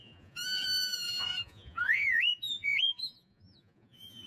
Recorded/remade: remade